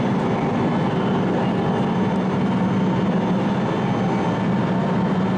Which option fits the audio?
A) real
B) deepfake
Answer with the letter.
A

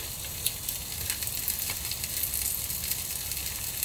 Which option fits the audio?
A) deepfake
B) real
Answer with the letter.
B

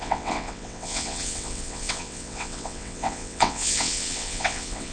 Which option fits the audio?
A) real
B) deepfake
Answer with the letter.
B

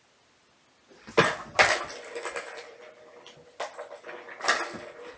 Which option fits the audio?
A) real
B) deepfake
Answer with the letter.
A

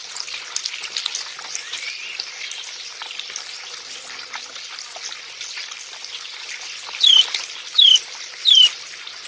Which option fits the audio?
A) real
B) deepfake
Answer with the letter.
A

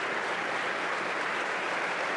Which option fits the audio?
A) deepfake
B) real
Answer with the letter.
B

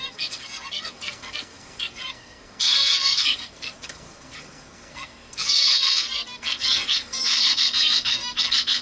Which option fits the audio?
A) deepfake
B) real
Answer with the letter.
A